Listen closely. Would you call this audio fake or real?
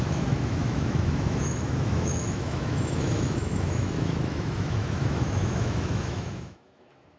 fake